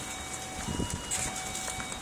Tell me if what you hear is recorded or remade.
recorded